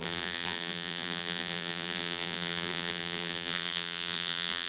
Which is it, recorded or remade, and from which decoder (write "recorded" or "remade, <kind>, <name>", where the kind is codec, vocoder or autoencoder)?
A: remade, vocoder, BigVGAN v2